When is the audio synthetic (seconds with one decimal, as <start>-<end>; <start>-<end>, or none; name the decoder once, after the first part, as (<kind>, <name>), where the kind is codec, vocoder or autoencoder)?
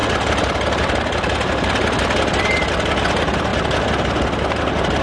none